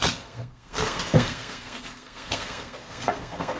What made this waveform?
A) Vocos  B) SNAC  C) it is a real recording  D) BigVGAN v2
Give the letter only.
B